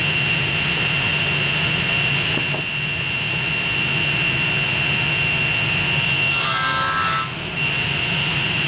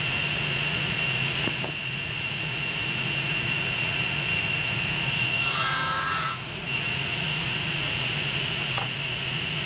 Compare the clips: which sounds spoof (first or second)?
second